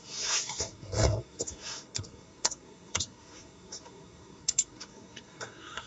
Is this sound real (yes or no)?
no